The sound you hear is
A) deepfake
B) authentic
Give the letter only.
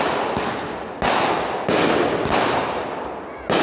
B